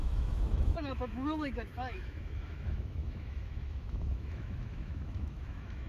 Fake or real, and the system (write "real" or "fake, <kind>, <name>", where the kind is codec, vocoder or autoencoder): fake, autoencoder, DAC-VAE